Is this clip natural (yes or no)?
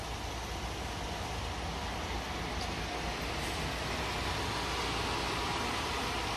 yes